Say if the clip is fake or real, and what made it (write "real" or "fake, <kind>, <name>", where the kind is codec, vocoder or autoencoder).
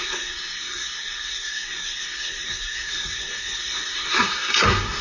fake, codec, SNAC